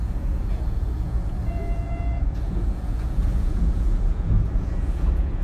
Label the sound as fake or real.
fake